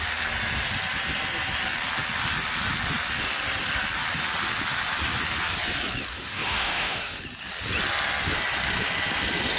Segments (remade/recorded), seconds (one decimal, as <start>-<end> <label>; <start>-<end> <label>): 0.0-6.1 recorded; 6.1-7.2 remade; 7.2-9.6 recorded